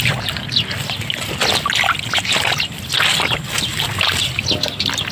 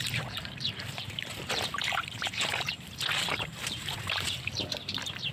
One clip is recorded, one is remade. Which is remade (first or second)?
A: second